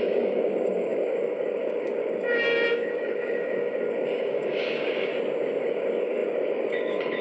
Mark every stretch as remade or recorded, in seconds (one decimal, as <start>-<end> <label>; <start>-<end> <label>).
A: 0.0-5.1 remade; 5.1-5.6 recorded; 5.6-7.2 remade